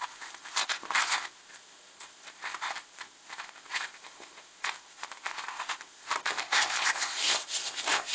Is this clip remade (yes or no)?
yes